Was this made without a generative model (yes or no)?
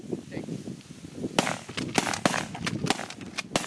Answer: yes